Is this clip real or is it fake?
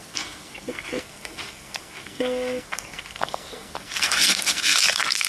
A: fake